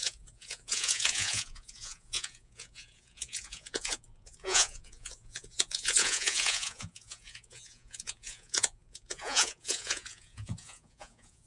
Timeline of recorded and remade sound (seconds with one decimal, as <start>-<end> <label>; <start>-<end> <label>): 0.0-11.5 remade